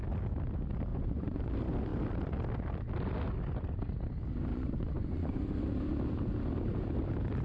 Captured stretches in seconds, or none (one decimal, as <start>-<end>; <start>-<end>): 0.0-0.9; 1.5-4.5; 5.4-7.4